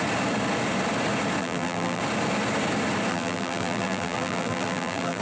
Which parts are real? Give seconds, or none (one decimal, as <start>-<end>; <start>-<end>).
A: 0.0-1.4; 2.0-3.1